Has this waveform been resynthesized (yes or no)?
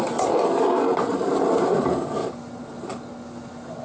no